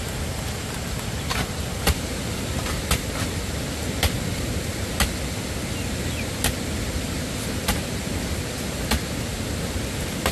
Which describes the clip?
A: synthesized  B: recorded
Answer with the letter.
B